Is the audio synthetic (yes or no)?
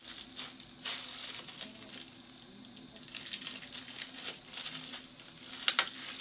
no